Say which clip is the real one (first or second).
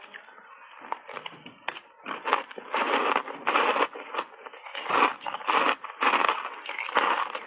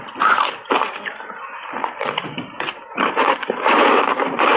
first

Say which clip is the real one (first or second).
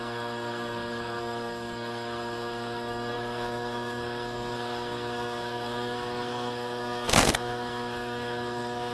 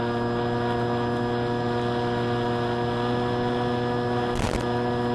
second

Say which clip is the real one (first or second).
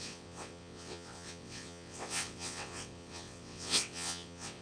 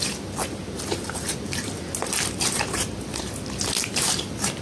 second